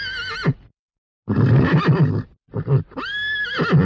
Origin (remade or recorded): recorded